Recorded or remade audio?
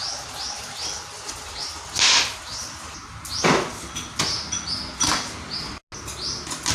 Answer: recorded